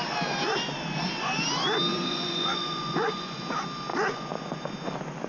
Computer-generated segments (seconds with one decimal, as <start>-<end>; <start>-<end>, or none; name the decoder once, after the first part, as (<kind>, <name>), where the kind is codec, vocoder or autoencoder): 1.9-3.4 (vocoder, Vocos); 3.9-4.7